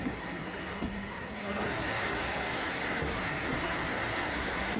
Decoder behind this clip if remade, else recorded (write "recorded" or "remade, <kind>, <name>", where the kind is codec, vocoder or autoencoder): remade, codec, SNAC